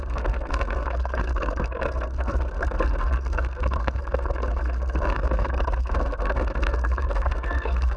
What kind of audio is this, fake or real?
fake